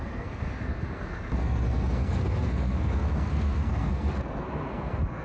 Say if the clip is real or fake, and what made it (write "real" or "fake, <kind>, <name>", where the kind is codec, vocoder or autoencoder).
fake, codec, SNAC